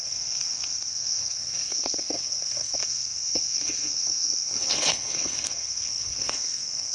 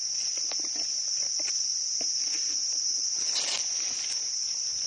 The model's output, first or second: first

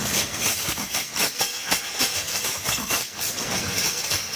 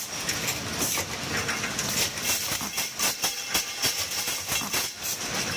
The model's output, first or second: first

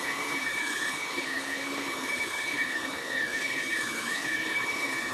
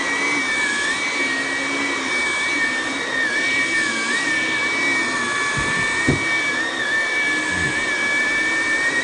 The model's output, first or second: first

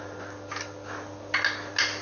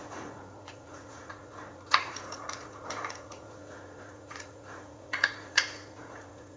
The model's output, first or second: second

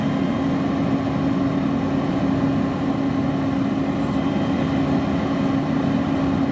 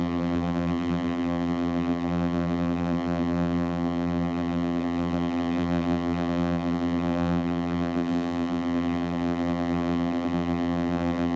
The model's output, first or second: second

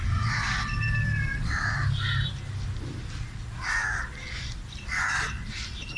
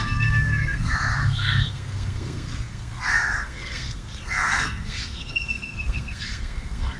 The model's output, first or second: second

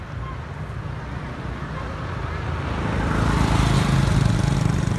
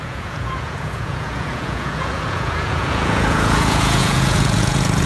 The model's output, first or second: second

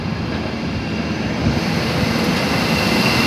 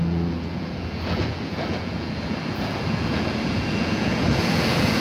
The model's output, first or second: second